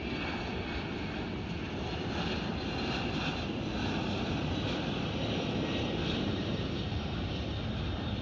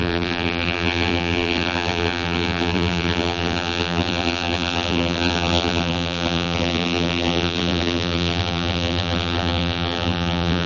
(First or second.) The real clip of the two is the first